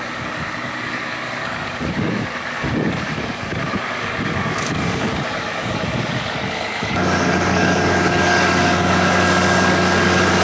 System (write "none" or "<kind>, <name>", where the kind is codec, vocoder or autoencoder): codec, DAC